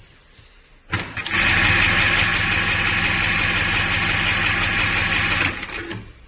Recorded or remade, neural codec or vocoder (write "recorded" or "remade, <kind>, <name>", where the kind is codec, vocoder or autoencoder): recorded